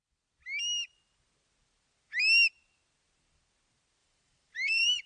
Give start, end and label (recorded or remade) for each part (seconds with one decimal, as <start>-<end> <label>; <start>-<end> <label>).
0.0-4.0 recorded; 4.0-5.1 remade